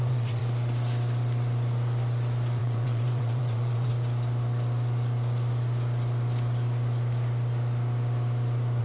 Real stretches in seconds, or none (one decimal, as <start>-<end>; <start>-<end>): 0.4-2.6; 3.9-8.8